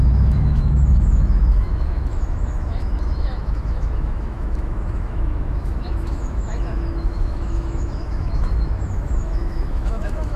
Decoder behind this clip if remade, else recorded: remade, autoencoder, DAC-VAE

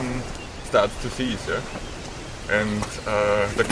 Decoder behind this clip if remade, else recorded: remade, vocoder, BigVGAN v2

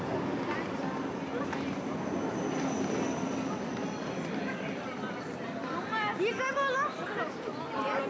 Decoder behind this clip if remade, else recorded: recorded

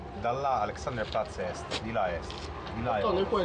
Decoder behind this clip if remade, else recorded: recorded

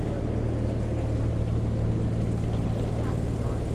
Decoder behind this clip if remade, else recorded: recorded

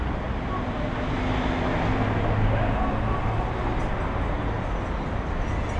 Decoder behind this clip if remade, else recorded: recorded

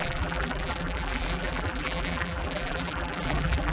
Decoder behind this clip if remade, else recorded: remade, vocoder, BigVGAN v2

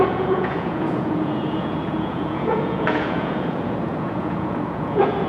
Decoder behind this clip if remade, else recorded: remade, vocoder, Vocos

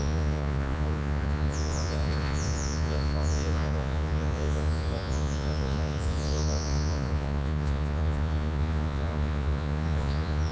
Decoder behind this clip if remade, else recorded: remade, vocoder, Vocos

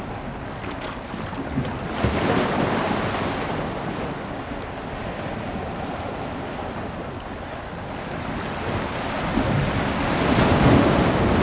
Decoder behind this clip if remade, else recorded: recorded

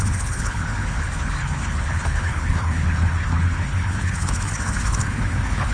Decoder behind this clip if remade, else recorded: remade, codec, HILCodec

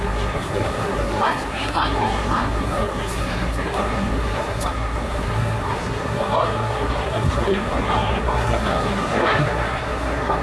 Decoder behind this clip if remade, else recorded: remade, codec, SNAC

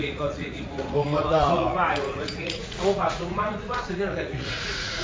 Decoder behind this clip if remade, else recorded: remade, vocoder, Vocos